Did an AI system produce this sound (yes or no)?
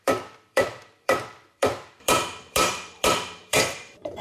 yes